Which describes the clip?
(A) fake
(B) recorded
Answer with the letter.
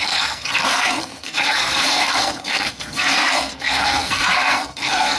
A